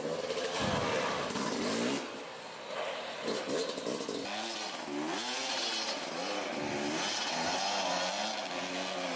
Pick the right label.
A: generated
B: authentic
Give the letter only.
B